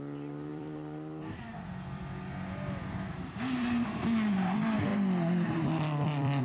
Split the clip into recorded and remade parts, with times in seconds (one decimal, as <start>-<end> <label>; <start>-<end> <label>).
0.0-0.5 recorded; 0.5-2.0 remade; 2.0-4.9 recorded; 4.9-6.4 remade